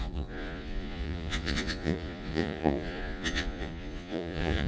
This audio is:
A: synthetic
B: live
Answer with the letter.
A